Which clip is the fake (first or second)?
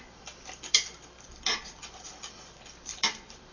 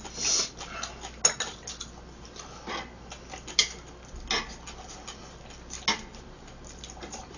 first